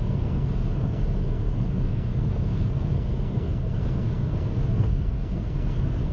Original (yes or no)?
no